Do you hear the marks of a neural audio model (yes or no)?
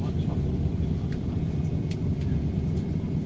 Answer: no